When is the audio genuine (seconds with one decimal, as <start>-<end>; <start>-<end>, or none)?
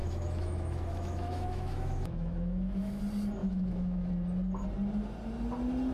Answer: 3.0-3.4; 4.1-5.9